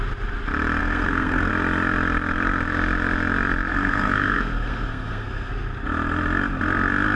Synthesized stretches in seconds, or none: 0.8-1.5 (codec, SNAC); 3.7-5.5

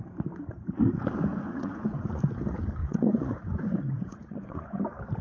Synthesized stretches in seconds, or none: 1.3-2.2 (vocoder, Vocos); 2.8-4.8

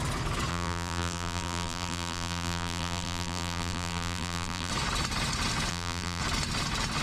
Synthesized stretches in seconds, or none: 0.5-4.7 (vocoder, BigVGAN v2); 5.7-6.2

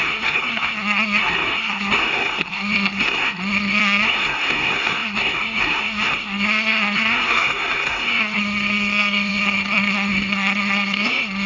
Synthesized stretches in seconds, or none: 0.0-11.5 (codec, SNAC)